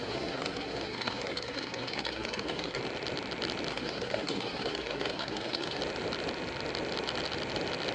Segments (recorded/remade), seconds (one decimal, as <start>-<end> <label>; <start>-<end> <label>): 0.0-2.8 remade; 2.8-3.7 recorded; 3.7-5.8 remade; 5.8-7.9 recorded